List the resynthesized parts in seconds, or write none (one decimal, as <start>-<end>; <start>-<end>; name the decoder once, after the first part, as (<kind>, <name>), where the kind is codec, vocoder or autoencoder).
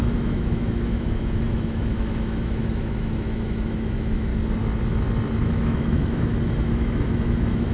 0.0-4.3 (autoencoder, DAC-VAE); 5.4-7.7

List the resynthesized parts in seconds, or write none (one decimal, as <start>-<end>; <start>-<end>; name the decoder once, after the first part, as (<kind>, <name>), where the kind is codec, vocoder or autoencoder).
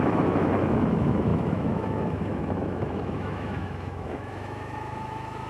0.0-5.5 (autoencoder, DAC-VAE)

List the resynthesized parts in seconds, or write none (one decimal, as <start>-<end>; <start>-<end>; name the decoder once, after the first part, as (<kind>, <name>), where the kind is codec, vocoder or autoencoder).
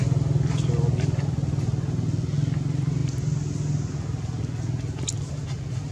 none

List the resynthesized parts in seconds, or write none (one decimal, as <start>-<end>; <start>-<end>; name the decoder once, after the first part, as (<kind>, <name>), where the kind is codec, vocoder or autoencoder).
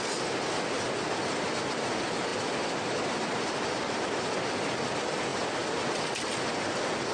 none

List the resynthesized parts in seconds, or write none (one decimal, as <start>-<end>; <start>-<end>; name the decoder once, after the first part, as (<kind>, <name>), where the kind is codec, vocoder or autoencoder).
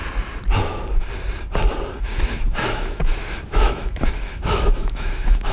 2.0-5.5 (autoencoder, DAC-VAE)